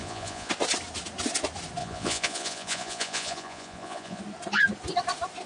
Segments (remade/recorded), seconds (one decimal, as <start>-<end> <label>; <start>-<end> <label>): 0.0-0.5 remade; 0.5-1.8 recorded; 1.8-4.2 remade; 4.2-5.5 recorded